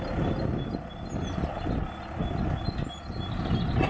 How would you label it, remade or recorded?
recorded